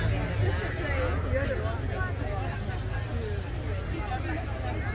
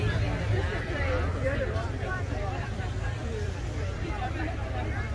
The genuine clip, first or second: first